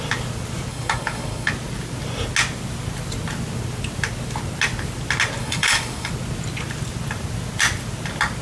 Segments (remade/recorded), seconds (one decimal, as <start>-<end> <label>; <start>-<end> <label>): 0.0-0.7 recorded; 0.7-1.5 remade; 1.5-5.4 recorded; 5.4-6.1 remade; 6.1-8.4 recorded